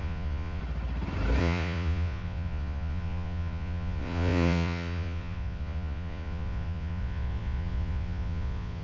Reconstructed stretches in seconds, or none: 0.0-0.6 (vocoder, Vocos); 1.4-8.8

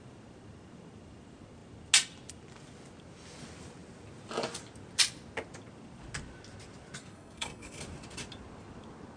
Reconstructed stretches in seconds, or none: 7.0-7.8 (codec, SNAC)